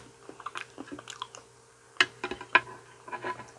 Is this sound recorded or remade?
recorded